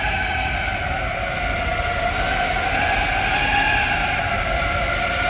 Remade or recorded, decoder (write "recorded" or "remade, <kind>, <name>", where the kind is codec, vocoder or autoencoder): recorded